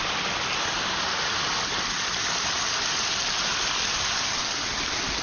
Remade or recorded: recorded